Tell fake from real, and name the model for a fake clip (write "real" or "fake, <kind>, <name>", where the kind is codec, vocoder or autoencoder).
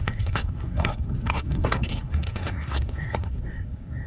fake, codec, SNAC